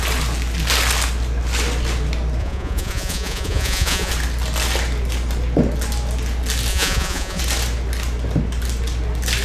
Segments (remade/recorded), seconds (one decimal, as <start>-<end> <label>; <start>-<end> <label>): 0.0-2.4 recorded; 2.4-4.1 remade; 4.1-6.7 recorded; 6.7-7.4 remade; 7.4-9.4 recorded